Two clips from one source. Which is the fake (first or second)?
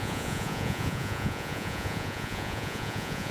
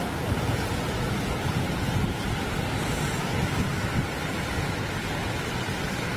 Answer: first